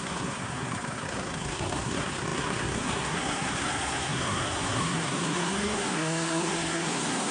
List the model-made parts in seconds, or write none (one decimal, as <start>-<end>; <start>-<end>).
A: 0.0-7.3